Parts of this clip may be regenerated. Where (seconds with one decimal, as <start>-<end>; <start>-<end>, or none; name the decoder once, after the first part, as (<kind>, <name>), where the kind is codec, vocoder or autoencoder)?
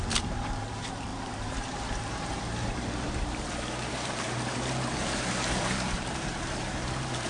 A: 0.0-7.3 (vocoder, BigVGAN v2)